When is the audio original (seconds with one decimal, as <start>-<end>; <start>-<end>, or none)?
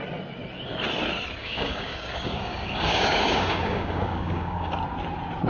0.0-1.4; 4.7-5.5